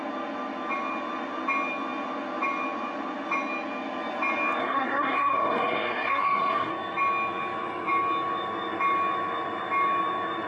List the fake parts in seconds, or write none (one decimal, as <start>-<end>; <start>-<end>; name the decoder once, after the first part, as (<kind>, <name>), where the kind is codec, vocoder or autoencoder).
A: 4.6-6.7 (codec, SNAC)